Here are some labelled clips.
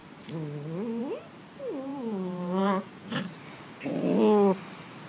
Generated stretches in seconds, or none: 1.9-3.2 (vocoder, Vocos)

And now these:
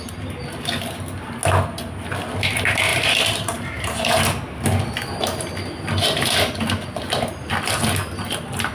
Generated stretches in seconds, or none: 2.9-4.2 (vocoder, BigVGAN v2)